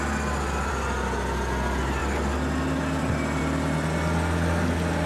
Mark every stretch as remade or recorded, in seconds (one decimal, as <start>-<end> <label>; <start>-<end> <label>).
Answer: 0.0-5.1 recorded